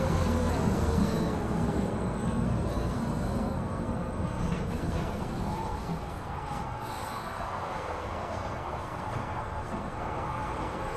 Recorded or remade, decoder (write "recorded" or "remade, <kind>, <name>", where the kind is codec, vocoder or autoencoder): remade, codec, SNAC